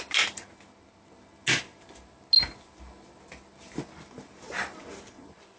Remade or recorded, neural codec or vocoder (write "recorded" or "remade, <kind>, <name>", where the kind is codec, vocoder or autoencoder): recorded